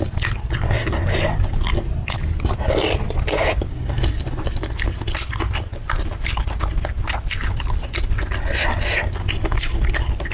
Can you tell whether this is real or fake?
real